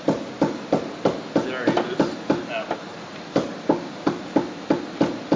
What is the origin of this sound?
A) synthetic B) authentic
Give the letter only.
B